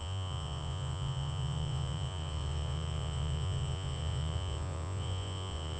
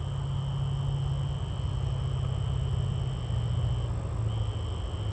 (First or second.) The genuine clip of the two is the second